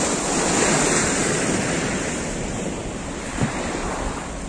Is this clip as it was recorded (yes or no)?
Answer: yes